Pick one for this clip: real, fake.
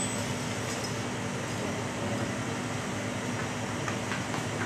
real